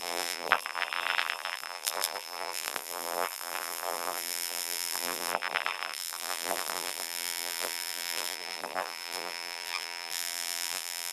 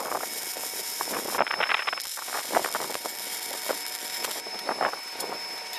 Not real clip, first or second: first